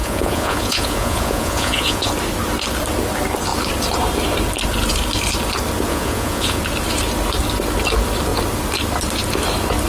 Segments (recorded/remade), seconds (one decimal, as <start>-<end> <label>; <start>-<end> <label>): 0.0-2.1 remade; 2.1-5.9 recorded; 5.9-6.6 remade; 6.6-9.9 recorded